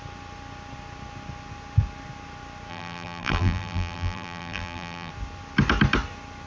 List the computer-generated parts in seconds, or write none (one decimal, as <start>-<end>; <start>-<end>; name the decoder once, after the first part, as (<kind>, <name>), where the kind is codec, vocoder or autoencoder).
2.7-5.1 (vocoder, BigVGAN v2)